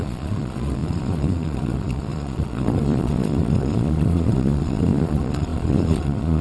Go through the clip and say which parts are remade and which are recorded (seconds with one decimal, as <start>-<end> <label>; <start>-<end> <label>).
0.0-6.4 remade